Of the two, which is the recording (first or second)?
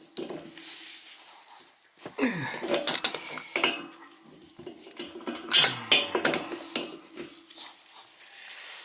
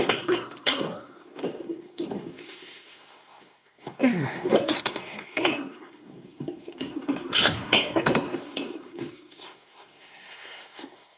first